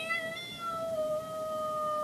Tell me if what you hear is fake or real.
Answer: real